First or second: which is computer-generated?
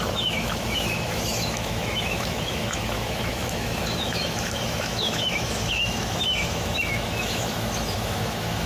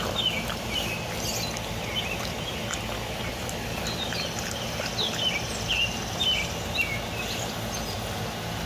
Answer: first